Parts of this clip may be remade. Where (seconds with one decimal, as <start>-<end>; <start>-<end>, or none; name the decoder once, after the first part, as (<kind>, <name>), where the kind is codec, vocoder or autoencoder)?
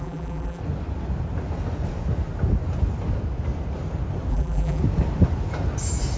0.0-0.6 (vocoder, BigVGAN v2); 4.3-4.8